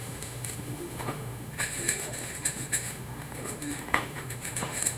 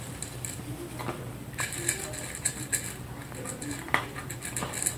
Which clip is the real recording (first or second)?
second